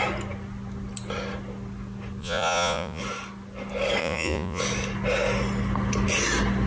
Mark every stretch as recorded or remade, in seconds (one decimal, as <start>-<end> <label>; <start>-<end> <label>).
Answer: 0.0-2.2 recorded; 2.2-3.0 remade; 3.0-4.0 recorded; 4.0-4.6 remade; 4.6-6.7 recorded